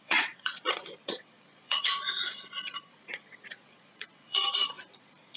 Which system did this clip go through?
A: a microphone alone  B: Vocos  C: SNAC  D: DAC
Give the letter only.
B